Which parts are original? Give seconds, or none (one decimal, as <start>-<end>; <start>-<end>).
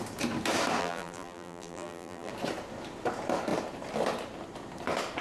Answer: 0.0-0.8; 2.3-5.2